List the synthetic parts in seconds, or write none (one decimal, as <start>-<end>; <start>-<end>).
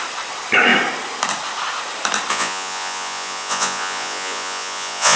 2.3-5.2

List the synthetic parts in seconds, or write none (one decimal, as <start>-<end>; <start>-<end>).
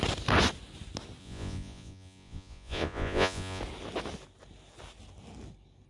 1.2-3.6